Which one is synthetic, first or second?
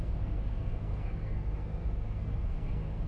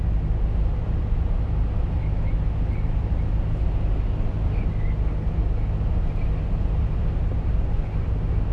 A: first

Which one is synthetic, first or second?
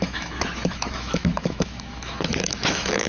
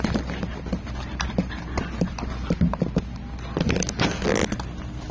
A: first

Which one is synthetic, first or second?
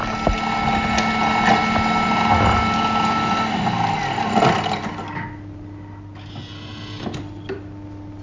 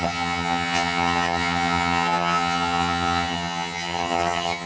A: second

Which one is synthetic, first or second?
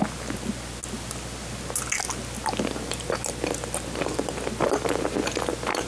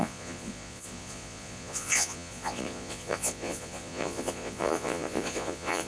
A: second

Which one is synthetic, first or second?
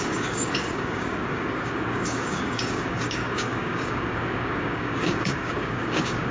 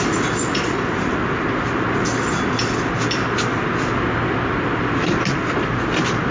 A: first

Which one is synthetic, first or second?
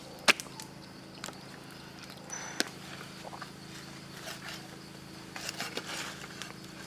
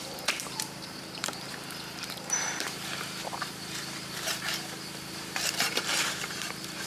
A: second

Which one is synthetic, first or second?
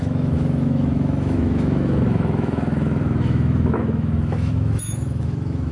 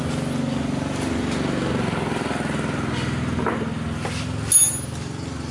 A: first